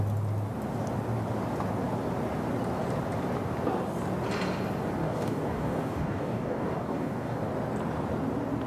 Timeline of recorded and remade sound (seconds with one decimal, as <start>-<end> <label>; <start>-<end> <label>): 0.0-5.0 recorded; 5.0-7.4 remade; 7.4-8.7 recorded